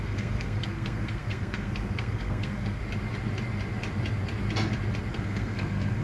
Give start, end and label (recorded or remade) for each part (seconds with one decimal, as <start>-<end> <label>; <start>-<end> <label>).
0.0-2.8 remade; 2.8-5.1 recorded; 5.1-6.0 remade